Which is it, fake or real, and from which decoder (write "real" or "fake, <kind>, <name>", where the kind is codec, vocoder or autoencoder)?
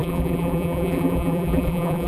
fake, vocoder, BigVGAN v2